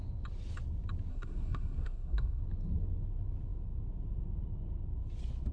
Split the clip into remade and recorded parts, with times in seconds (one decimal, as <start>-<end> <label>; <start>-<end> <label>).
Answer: 0.0-1.1 recorded; 1.1-2.4 remade; 2.4-5.5 recorded